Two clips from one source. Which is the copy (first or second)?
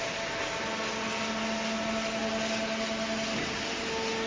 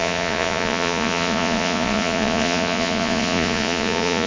second